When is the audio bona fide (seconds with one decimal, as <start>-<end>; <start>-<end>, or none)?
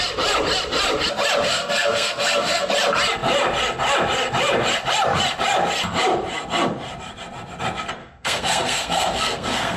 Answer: 0.0-1.5; 2.7-8.0